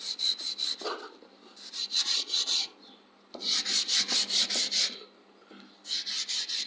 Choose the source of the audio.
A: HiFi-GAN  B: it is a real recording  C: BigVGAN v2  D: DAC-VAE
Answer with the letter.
B